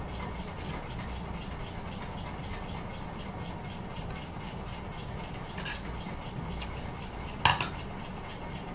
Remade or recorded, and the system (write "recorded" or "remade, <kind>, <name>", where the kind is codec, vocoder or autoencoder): recorded